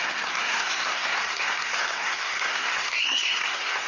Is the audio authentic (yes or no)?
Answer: no